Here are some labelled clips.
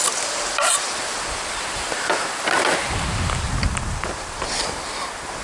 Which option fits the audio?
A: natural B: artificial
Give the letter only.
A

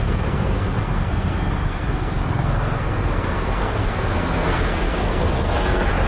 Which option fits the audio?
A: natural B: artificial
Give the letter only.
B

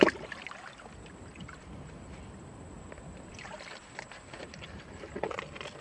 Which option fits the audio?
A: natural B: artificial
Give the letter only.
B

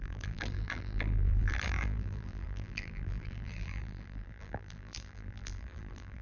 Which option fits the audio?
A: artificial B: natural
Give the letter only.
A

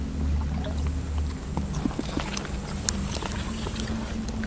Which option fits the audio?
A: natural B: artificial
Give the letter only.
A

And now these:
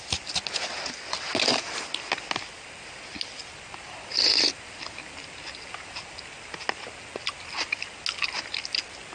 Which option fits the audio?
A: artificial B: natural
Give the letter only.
B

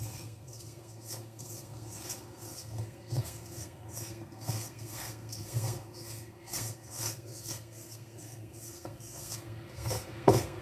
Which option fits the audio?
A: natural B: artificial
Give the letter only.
B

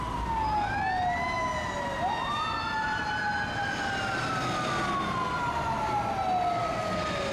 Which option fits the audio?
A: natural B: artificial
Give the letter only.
A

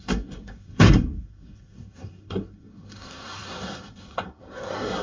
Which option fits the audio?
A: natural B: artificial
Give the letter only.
B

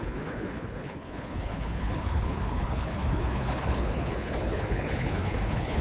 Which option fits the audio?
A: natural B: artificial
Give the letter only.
B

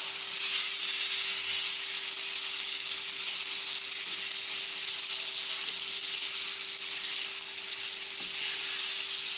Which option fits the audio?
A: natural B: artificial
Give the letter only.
A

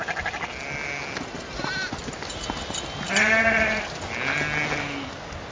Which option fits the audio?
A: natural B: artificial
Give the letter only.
A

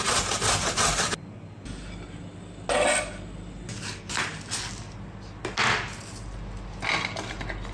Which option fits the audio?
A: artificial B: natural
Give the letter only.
B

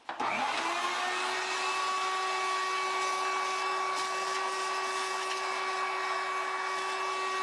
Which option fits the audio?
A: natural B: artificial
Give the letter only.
A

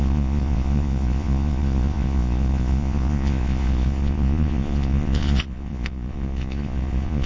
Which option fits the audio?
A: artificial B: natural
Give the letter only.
A